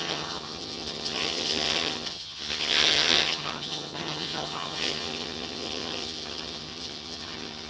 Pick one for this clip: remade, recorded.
remade